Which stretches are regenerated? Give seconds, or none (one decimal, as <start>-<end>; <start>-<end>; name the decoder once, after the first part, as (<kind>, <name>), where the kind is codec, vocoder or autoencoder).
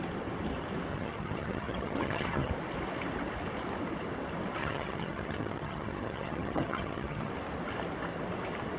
0.9-2.5 (vocoder, HiFi-GAN); 4.6-7.3